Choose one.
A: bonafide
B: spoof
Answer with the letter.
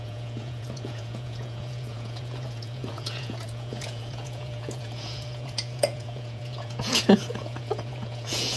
B